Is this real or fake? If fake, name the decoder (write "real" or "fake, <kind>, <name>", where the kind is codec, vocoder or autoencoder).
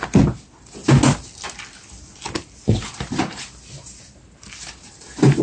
real